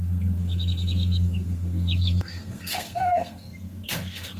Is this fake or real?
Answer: fake